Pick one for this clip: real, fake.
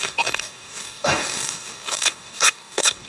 fake